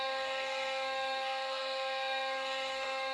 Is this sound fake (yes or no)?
yes